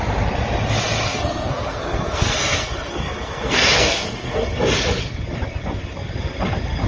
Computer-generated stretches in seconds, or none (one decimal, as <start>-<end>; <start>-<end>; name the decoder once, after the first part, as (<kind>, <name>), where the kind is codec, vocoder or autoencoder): 1.1-4.5 (codec, SNAC)